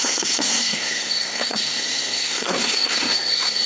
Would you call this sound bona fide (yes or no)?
no